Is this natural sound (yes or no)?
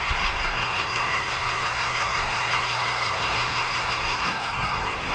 no